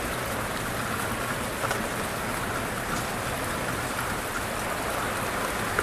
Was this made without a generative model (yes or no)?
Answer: yes